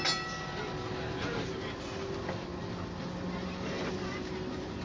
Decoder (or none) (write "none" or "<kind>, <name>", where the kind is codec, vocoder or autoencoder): none